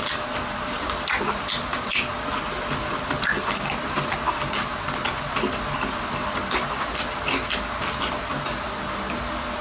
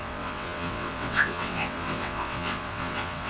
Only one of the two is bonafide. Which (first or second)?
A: first